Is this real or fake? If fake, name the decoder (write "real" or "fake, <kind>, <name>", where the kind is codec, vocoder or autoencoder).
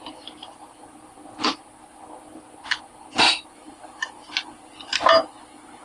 real